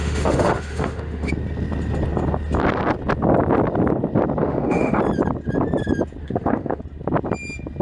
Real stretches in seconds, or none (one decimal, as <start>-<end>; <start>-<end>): 1.3-4.4; 5.0-6.2; 6.8-7.8